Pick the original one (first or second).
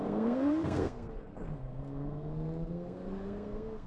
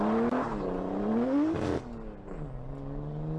second